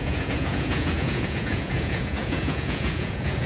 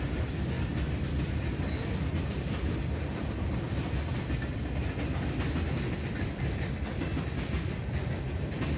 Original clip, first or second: second